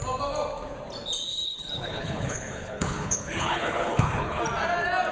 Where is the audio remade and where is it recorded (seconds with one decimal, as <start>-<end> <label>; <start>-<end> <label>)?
0.0-1.3 recorded; 1.3-4.4 remade; 4.4-5.1 recorded